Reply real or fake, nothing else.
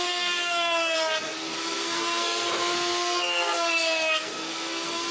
fake